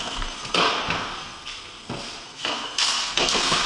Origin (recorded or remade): remade